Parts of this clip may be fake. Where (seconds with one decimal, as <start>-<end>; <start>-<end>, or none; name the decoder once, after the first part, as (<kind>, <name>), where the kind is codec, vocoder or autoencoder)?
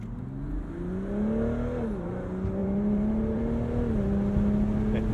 2.6-3.4 (vocoder, BigVGAN v2)